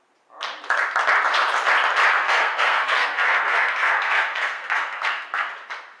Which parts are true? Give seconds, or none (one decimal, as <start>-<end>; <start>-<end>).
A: 0.0-2.2; 5.5-6.0